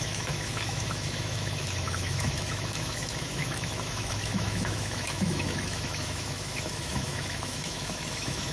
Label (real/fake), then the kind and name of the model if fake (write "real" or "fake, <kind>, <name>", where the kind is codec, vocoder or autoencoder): fake, autoencoder, DAC-VAE